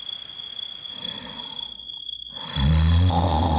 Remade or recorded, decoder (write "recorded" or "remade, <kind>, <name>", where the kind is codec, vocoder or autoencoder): recorded